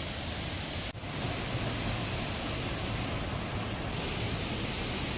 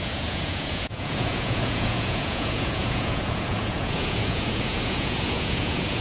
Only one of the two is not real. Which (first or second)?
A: second